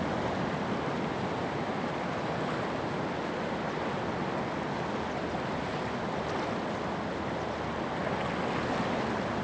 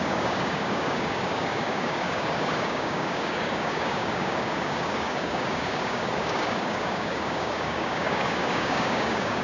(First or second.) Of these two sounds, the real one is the first